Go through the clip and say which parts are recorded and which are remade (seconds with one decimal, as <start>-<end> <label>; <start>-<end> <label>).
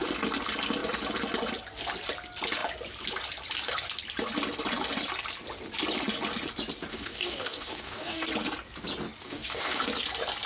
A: 0.0-6.9 recorded; 6.9-8.3 remade; 8.3-9.2 recorded; 9.2-9.8 remade; 9.8-10.5 recorded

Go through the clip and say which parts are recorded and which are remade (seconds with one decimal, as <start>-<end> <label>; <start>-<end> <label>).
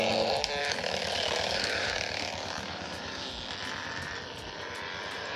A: 0.0-0.6 recorded; 0.6-3.3 remade; 3.3-5.4 recorded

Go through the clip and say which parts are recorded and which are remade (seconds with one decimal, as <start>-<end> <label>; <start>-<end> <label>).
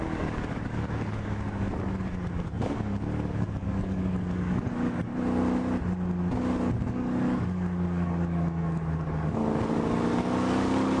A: 0.0-5.1 remade; 5.1-6.9 recorded; 6.9-11.0 remade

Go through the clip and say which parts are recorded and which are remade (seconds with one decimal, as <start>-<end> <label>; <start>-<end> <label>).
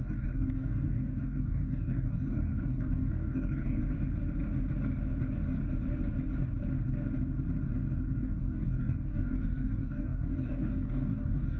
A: 0.0-3.8 remade; 3.8-8.0 recorded; 8.0-11.6 remade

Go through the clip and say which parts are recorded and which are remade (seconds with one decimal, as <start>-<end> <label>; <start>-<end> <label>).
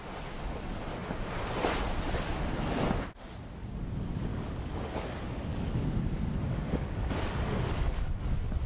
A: 0.0-4.3 recorded; 4.3-4.9 remade; 4.9-5.5 recorded; 5.5-8.1 remade; 8.1-8.7 recorded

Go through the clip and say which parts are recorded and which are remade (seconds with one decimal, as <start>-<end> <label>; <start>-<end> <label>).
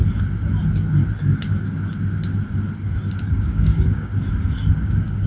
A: 0.0-3.2 recorded; 3.2-4.1 remade; 4.1-4.7 recorded; 4.7-5.3 remade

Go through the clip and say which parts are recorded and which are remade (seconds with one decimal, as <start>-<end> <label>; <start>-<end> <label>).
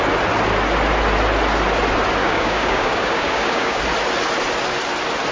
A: 0.0-2.2 recorded; 2.2-3.8 remade; 3.8-5.3 recorded